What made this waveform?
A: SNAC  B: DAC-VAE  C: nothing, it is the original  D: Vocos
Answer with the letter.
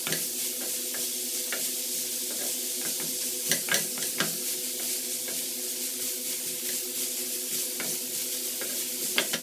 C